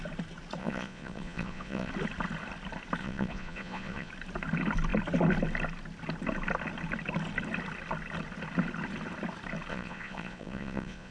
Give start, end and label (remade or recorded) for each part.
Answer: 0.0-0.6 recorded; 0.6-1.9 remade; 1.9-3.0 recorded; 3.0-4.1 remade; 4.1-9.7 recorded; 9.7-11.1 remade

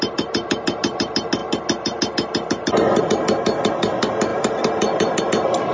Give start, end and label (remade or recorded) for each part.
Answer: 0.0-5.7 recorded